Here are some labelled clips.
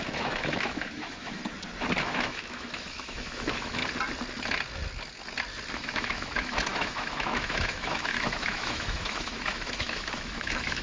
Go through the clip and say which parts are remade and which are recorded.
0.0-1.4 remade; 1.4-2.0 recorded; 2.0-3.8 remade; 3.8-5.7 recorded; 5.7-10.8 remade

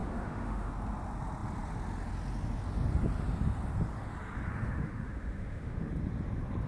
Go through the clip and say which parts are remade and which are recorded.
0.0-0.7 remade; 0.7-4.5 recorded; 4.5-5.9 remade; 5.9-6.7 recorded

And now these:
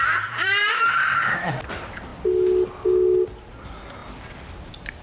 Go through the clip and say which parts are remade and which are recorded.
0.0-0.7 recorded; 0.7-1.6 remade; 1.6-5.0 recorded

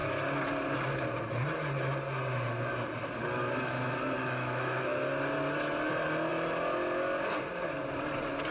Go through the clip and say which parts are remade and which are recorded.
0.0-4.2 recorded; 4.2-5.1 remade; 5.1-8.5 recorded

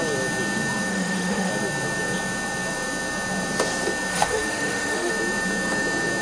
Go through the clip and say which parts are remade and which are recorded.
0.0-0.9 recorded; 0.9-1.5 remade; 1.5-4.1 recorded; 4.1-5.1 remade; 5.1-6.2 recorded